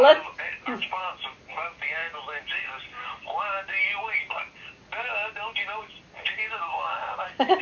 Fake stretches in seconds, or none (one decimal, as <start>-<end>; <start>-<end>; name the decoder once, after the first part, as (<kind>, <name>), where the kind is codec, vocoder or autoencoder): none